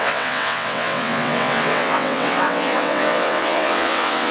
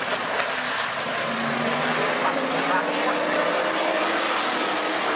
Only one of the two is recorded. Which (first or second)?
second